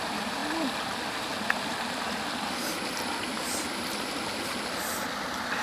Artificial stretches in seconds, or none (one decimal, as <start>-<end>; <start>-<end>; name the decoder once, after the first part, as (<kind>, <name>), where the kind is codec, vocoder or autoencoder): none